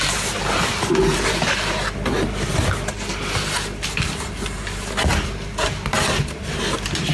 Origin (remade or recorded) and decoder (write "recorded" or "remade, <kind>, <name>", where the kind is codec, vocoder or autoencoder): recorded